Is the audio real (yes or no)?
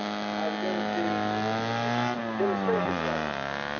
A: yes